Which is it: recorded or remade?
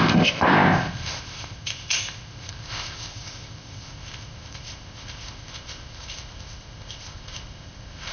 remade